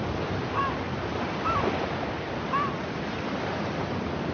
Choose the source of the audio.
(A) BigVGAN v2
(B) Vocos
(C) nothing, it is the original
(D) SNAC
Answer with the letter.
C